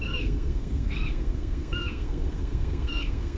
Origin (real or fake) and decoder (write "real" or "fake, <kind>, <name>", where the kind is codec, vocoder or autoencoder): fake, codec, SNAC